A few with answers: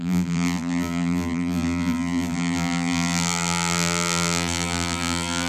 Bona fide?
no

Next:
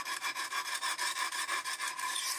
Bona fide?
no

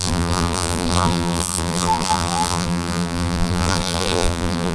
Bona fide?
no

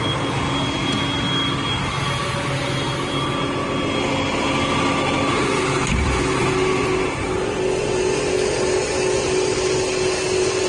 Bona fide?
yes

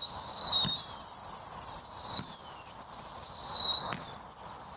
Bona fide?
yes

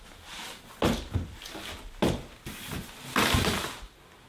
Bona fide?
yes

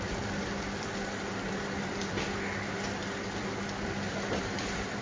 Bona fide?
no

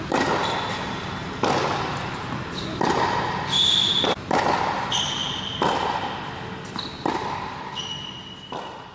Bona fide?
yes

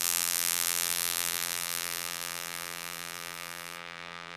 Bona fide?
no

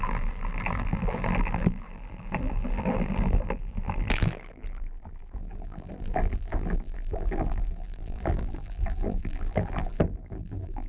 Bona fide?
no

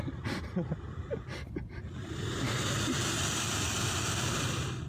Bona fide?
yes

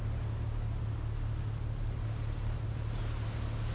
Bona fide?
yes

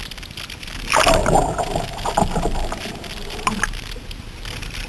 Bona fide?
yes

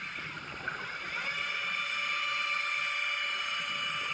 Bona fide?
yes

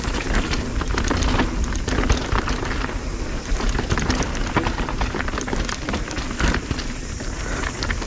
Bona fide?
yes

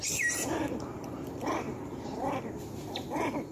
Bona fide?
no